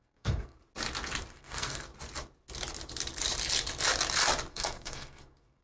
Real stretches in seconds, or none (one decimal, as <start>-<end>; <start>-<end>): 0.6-1.3; 1.9-4.5

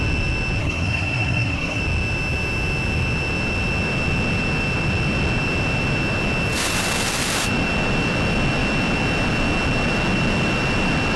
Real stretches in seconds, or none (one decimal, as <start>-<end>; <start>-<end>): 0.0-0.6; 1.8-11.2

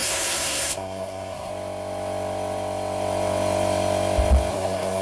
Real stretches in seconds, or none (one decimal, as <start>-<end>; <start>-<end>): 1.5-4.5

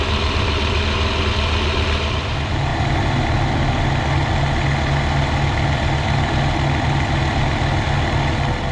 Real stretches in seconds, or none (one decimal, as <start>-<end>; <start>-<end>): 0.0-8.7